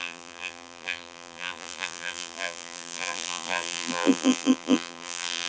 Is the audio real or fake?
fake